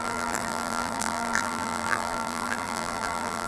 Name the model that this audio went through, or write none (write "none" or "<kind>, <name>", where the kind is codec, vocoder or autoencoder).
vocoder, BigVGAN v2